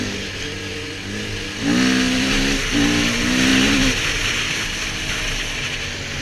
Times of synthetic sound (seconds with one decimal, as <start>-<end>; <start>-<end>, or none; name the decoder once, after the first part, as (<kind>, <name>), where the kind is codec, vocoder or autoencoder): none